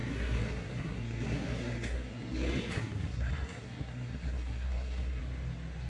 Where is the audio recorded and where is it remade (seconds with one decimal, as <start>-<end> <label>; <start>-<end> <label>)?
0.0-5.2 remade; 5.2-5.9 recorded